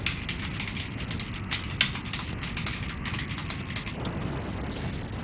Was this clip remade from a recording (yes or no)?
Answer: no